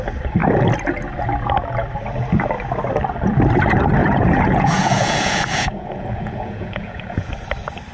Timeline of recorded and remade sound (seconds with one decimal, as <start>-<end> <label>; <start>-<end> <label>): 0.0-4.0 recorded; 4.0-7.3 remade; 7.3-7.9 recorded